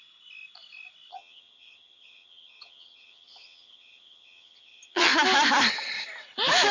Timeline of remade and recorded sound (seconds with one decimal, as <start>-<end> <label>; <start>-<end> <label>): 0.0-1.1 recorded; 1.1-5.1 remade; 5.1-6.7 recorded